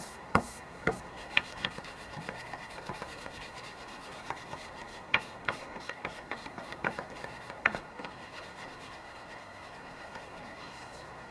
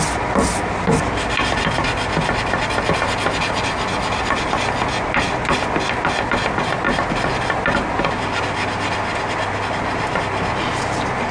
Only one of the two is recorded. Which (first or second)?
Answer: second